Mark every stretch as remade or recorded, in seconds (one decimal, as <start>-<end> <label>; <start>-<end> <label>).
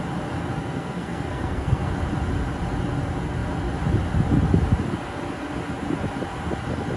0.0-0.6 recorded; 0.6-1.9 remade; 1.9-7.0 recorded